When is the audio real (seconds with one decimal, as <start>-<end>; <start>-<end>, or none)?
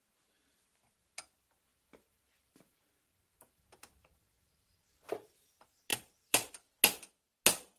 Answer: 0.0-1.7; 5.5-5.9; 6.5-7.8